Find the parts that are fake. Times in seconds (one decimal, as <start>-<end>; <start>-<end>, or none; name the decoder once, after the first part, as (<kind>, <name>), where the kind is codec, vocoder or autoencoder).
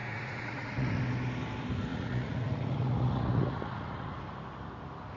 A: 0.0-1.0 (vocoder, Vocos); 1.9-4.2